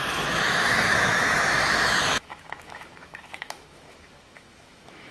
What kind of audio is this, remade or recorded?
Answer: remade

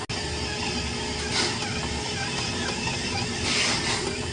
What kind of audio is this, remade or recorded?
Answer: recorded